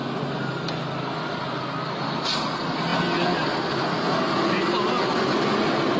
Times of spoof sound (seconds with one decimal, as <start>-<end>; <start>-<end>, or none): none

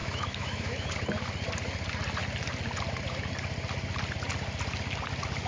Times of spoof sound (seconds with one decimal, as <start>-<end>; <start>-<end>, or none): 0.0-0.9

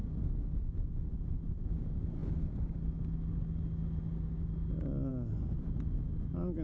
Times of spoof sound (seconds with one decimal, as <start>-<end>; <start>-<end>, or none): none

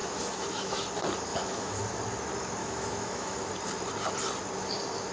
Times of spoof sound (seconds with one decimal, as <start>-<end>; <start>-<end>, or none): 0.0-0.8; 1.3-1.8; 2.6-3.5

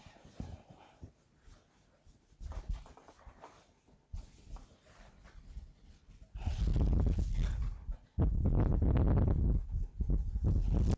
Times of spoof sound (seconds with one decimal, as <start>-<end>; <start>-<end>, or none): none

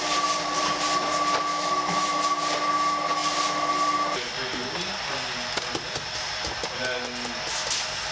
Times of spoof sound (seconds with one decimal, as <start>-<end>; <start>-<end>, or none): 1.5-2.2